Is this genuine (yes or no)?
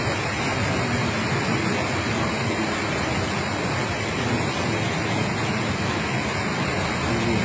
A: yes